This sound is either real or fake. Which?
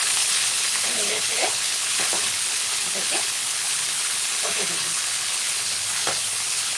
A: fake